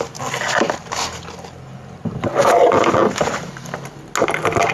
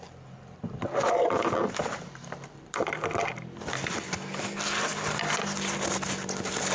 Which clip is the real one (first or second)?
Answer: first